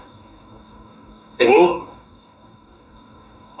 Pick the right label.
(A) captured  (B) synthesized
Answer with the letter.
B